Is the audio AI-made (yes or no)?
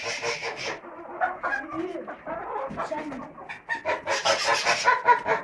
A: no